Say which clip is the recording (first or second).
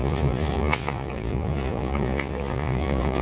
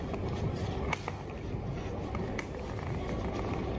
second